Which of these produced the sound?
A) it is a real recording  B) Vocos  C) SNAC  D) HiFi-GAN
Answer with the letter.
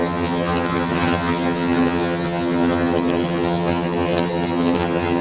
D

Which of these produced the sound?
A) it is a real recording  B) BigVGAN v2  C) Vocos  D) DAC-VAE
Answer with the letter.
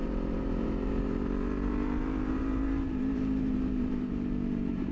B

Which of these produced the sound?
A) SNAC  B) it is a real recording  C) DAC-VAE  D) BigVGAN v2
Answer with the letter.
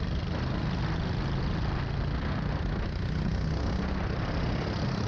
B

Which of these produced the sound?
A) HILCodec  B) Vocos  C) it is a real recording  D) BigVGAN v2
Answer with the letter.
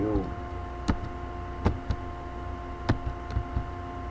C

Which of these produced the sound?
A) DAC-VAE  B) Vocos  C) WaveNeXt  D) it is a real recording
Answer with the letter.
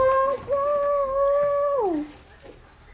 D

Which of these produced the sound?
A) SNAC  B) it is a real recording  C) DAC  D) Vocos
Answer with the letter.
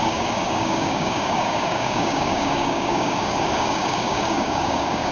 C